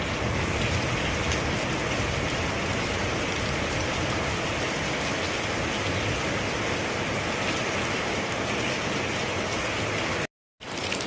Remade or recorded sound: recorded